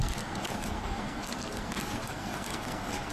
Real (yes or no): no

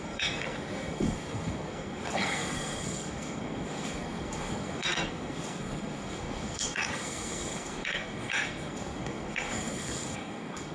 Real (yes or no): no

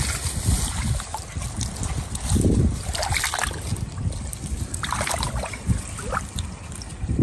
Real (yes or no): yes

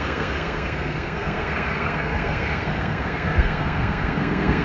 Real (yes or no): no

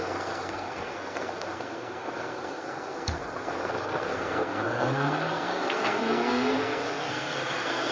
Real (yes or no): no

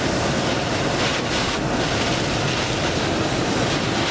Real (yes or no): yes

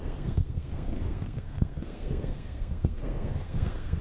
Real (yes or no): no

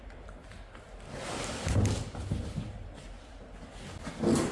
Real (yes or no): yes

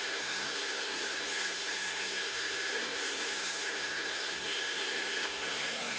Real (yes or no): no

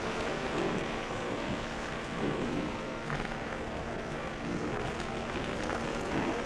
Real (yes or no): no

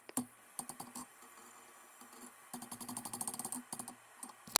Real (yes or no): yes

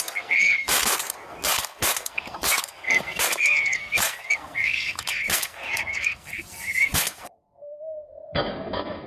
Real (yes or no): no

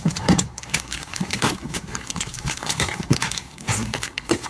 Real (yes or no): no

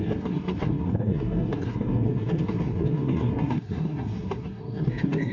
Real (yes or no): no